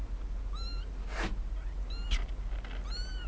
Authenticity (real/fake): real